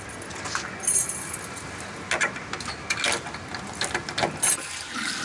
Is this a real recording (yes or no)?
yes